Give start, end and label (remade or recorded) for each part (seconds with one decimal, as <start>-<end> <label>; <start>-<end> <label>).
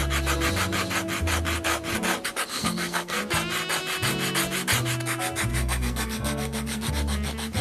0.0-2.5 recorded; 2.5-3.2 remade; 3.2-5.5 recorded; 5.5-6.9 remade; 6.9-7.6 recorded